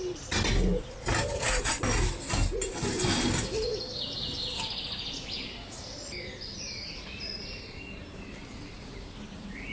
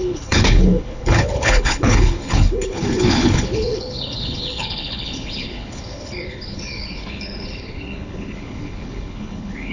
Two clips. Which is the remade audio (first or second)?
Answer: second